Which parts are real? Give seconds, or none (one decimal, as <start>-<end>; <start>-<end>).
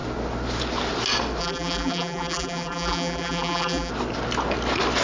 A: 0.0-1.4; 3.9-5.0